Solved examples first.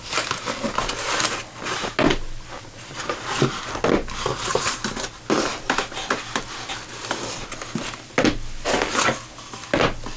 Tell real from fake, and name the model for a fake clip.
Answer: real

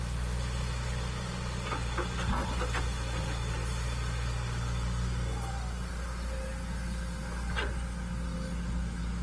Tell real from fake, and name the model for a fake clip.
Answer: real